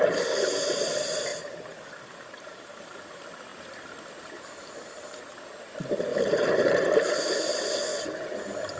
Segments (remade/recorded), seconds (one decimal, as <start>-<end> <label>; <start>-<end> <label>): 0.0-1.3 recorded; 1.3-2.8 remade; 2.8-6.1 recorded; 6.1-6.8 remade; 6.8-7.9 recorded; 7.9-8.8 remade